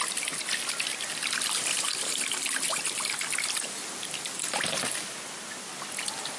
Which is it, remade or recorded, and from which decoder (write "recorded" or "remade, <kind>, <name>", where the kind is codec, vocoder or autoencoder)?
recorded